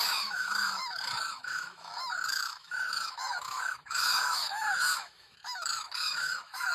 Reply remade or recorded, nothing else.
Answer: remade